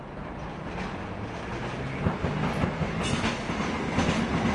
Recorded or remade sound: recorded